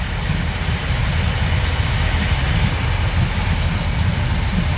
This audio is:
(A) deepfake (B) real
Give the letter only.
B